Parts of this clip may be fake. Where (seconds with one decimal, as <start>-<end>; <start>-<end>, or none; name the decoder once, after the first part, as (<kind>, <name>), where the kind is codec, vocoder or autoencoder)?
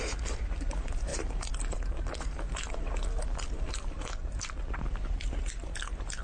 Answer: none